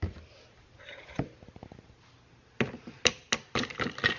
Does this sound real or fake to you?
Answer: real